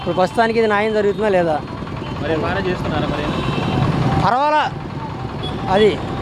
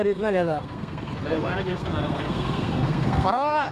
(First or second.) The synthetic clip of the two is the second